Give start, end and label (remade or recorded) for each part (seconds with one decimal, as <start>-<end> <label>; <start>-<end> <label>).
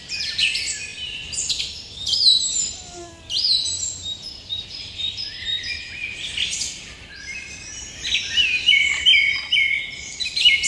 0.0-9.1 remade; 9.1-9.8 recorded; 9.8-10.7 remade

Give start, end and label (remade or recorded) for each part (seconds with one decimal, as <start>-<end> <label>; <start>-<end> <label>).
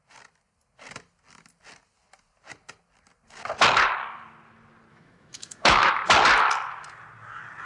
0.0-4.9 recorded; 4.9-5.9 remade; 5.9-7.7 recorded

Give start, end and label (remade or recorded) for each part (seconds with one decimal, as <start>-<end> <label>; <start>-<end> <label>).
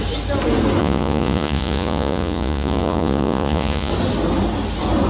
0.0-0.8 recorded; 0.8-3.9 remade; 3.9-5.1 recorded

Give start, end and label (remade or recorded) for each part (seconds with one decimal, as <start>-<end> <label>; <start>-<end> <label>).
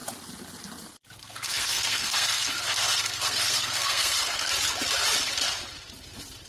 0.0-1.2 recorded; 1.2-4.5 remade; 4.5-6.5 recorded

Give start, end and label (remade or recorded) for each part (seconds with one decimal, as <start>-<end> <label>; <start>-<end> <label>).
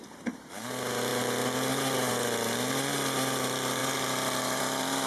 0.0-5.1 recorded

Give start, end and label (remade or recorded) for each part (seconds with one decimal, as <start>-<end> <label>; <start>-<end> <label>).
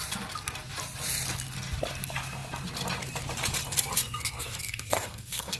0.0-4.0 recorded; 4.0-5.6 remade